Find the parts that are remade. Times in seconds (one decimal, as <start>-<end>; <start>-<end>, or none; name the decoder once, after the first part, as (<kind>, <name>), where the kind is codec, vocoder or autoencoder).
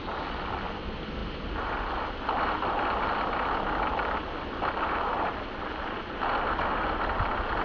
none